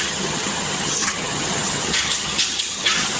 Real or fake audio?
fake